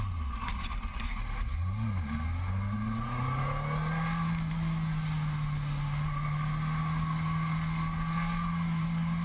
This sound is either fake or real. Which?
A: real